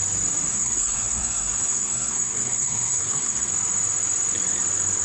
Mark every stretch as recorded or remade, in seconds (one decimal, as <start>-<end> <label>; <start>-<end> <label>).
0.0-0.5 recorded; 0.5-3.5 remade; 3.5-5.0 recorded